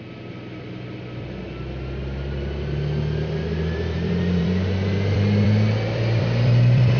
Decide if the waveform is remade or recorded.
remade